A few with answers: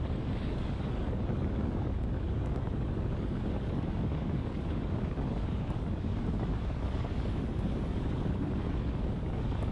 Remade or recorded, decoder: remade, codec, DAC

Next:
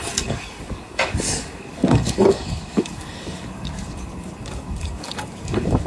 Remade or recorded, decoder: remade, codec, DAC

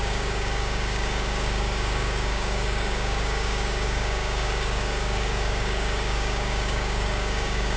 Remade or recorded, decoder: remade, codec, DAC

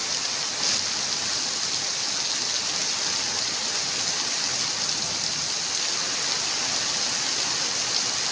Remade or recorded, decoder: recorded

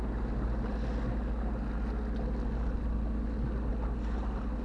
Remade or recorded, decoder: recorded